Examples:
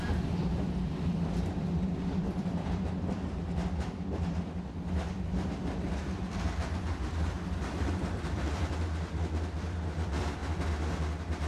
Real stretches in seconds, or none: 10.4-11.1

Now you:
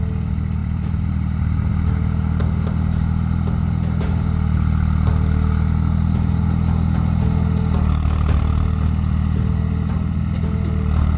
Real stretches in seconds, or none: 0.0-0.6; 1.7-11.2

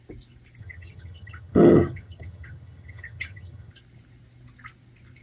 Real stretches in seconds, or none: 0.0-0.6; 3.7-5.2